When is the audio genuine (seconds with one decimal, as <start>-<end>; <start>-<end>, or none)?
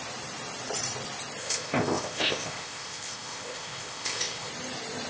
0.0-1.4; 4.5-5.1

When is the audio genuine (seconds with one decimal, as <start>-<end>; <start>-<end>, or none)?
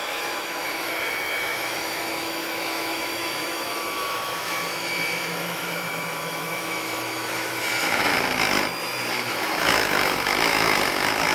8.1-9.2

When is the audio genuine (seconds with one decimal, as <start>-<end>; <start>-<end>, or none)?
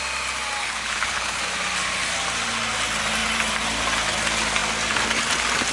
0.0-0.6; 1.4-5.7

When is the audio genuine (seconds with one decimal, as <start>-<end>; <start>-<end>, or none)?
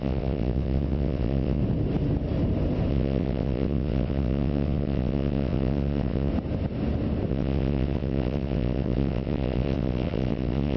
1.6-2.9; 6.3-7.3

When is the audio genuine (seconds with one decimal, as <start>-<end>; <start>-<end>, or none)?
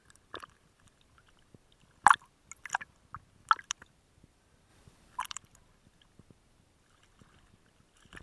0.0-4.7; 5.2-8.2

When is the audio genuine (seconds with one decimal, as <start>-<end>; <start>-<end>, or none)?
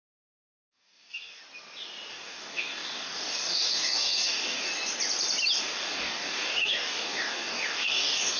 1.4-2.1; 4.7-5.6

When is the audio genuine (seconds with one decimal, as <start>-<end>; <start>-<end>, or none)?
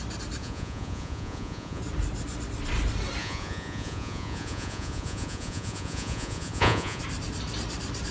0.0-0.4; 1.8-3.2; 7.0-8.1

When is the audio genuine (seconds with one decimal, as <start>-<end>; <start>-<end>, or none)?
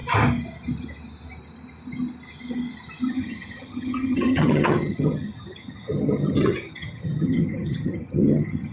0.0-3.1